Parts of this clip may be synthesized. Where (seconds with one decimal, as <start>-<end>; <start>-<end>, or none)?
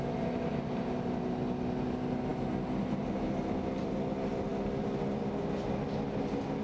none